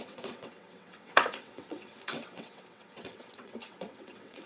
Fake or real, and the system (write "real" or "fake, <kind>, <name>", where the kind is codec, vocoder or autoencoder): fake, vocoder, WaveNeXt